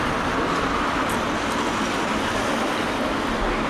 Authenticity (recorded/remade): recorded